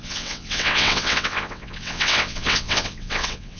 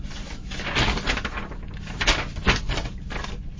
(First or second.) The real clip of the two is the second